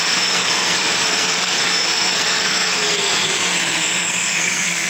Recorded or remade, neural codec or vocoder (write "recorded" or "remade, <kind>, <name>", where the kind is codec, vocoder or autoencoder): remade, codec, SNAC